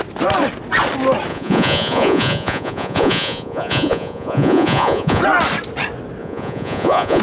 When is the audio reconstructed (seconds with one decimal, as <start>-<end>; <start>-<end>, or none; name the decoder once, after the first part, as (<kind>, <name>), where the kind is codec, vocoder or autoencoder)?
1.3-5.2 (vocoder, Vocos); 6.2-7.2